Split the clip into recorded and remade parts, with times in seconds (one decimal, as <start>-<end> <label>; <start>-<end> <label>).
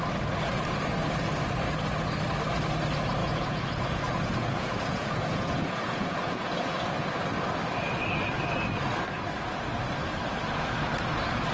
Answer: 0.0-3.2 recorded; 3.2-7.1 remade; 7.1-11.5 recorded